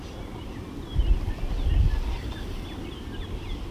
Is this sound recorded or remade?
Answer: recorded